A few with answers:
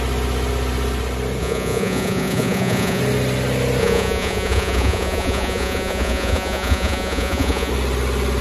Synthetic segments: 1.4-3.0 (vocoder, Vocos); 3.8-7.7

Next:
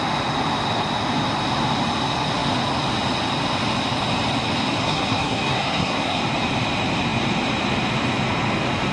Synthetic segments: 4.8-6.2 (codec, SNAC)